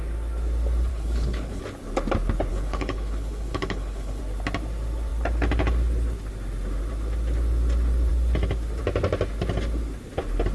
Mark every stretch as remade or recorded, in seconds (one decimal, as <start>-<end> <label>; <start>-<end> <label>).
0.0-0.9 recorded; 0.9-1.6 remade; 1.6-2.5 recorded; 2.5-4.2 remade; 4.2-10.5 recorded